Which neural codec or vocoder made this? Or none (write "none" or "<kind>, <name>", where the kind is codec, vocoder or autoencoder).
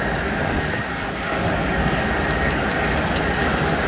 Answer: codec, DAC